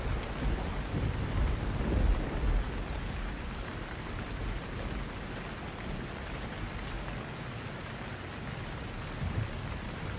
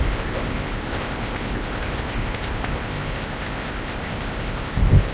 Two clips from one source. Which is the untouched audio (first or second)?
first